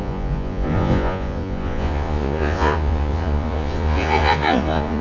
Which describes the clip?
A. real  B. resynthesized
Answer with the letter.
B